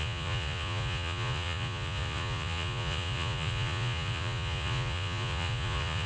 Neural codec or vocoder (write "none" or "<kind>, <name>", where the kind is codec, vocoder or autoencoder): vocoder, Vocos